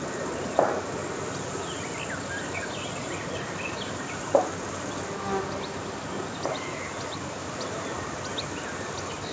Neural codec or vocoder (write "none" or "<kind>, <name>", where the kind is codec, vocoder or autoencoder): none